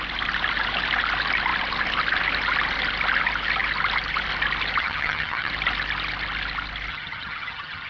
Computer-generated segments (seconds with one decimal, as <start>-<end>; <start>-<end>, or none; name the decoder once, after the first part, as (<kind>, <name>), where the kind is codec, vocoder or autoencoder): 4.8-5.5 (vocoder, HiFi-GAN); 6.9-7.9